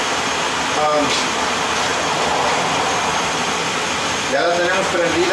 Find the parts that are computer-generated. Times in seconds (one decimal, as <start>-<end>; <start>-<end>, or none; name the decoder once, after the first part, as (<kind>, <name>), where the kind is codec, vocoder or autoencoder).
none